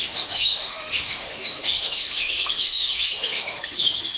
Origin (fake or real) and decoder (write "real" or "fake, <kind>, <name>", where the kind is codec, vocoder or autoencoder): fake, autoencoder, DAC-VAE